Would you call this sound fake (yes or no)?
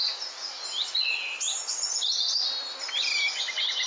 no